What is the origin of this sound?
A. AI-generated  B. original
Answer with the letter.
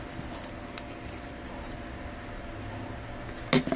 B